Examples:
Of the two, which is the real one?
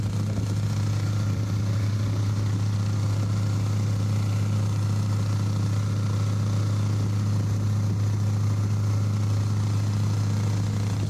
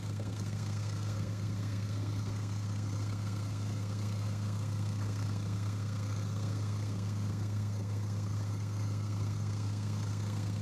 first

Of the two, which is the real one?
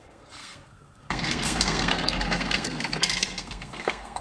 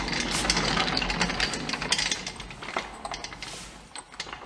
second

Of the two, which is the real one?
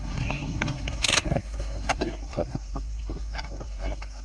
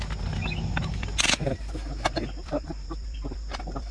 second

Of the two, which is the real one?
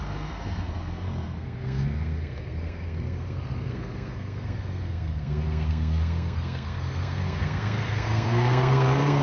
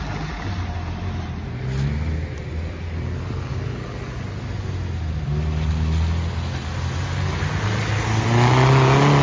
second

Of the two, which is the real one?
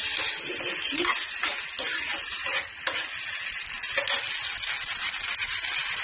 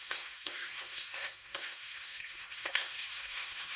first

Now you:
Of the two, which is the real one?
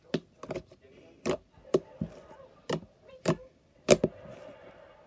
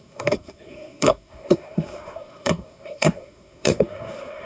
first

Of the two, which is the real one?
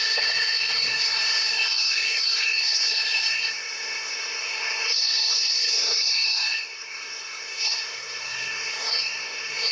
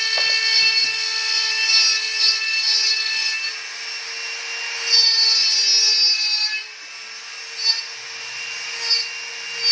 second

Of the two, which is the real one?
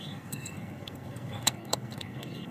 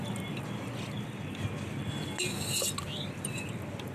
second